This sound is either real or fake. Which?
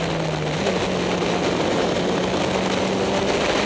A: real